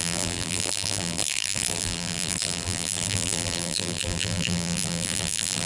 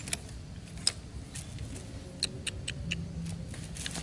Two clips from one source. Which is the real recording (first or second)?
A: second